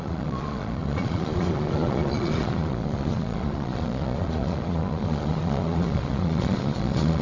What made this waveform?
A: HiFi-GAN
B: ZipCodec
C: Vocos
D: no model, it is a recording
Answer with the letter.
C